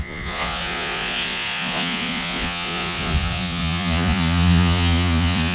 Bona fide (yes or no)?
no